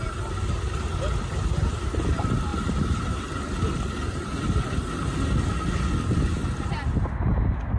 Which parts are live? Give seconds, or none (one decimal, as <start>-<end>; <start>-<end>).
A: 0.0-7.8